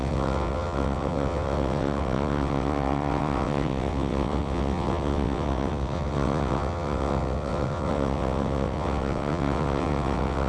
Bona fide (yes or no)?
no